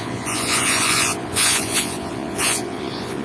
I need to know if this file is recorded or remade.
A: remade